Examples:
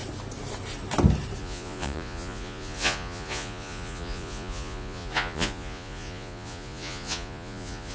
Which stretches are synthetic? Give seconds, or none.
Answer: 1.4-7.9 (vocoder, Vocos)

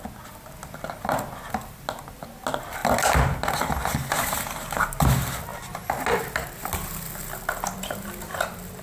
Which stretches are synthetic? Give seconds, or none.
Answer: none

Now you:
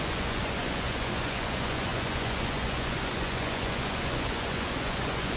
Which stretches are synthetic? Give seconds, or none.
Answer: 0.0-5.4 (vocoder, Vocos)

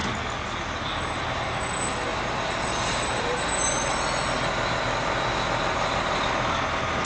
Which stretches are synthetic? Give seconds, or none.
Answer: 2.1-3.5 (vocoder, BigVGAN v2)

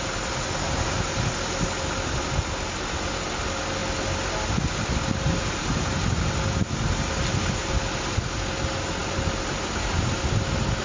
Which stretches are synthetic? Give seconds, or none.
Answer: none

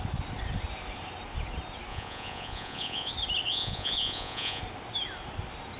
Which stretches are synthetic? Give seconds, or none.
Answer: 1.9-3.1 (vocoder, Vocos); 3.5-4.6

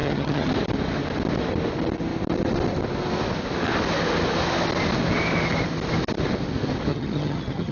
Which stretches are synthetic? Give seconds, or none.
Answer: 0.0-0.5 (vocoder, HiFi-GAN); 6.9-7.7